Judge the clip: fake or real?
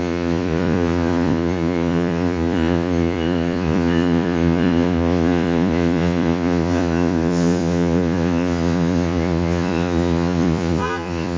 fake